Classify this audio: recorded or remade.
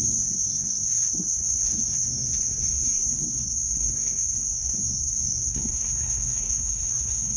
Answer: remade